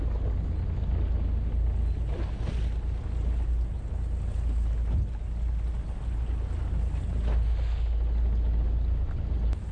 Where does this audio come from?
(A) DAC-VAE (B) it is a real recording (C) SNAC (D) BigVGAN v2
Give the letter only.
B